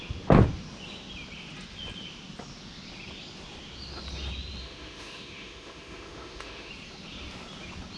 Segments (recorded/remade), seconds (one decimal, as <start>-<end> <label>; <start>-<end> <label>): 0.0-4.6 recorded; 4.6-6.7 remade; 6.7-8.0 recorded